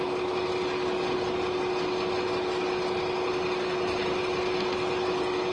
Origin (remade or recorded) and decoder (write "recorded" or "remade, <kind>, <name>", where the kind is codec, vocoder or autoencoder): recorded